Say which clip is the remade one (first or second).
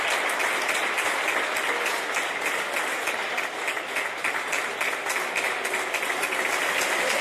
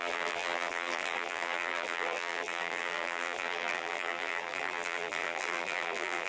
second